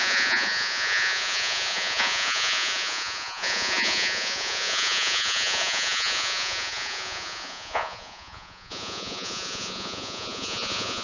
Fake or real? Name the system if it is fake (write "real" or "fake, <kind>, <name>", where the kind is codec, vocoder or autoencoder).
fake, vocoder, Vocos